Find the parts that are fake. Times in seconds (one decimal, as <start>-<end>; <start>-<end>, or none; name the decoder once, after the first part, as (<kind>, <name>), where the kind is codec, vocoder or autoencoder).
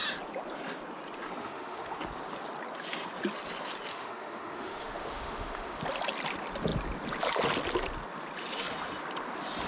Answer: 1.4-2.0 (autoencoder, DAC-VAE); 3.9-5.8